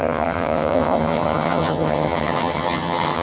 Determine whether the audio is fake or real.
fake